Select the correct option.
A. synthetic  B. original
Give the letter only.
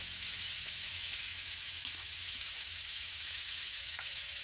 A